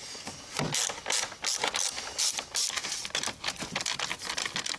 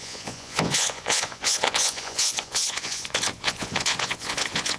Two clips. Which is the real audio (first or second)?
first